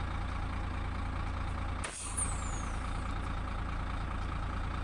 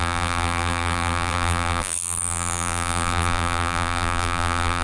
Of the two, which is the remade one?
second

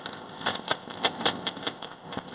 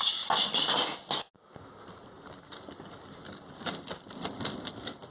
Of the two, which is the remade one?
first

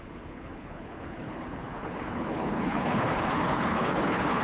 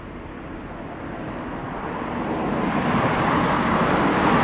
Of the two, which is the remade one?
first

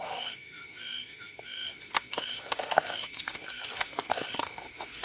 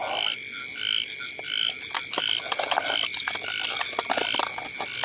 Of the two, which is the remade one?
first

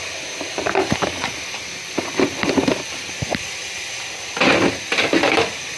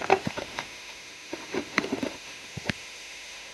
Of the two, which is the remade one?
second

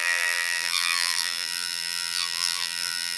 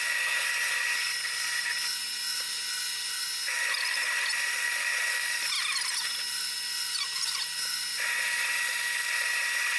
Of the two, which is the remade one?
first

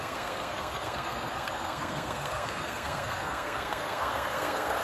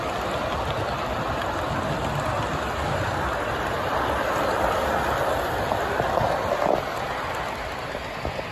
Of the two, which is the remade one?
first